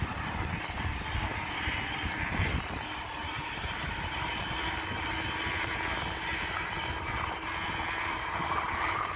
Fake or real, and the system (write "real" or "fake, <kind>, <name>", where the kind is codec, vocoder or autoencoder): real